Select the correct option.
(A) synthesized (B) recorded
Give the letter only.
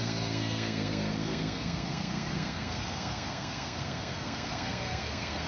A